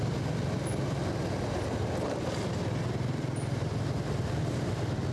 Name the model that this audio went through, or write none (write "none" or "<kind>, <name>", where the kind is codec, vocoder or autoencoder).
none